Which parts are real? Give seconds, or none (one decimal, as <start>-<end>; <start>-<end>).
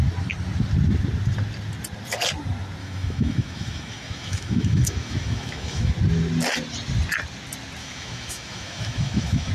0.0-2.8; 5.9-7.8